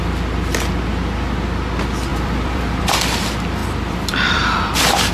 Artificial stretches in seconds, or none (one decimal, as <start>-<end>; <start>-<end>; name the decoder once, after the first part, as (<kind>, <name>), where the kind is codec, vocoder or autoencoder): 2.1-2.9 (vocoder, BigVGAN v2); 3.6-5.1